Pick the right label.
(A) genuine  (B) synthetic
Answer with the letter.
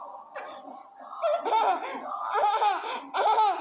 A